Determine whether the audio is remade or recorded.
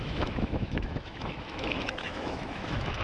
remade